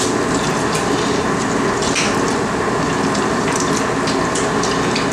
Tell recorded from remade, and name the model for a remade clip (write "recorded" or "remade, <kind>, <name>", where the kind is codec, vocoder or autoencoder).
recorded